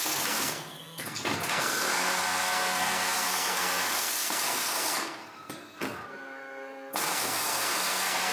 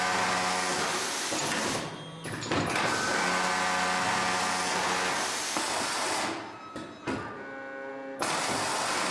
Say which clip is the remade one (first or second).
first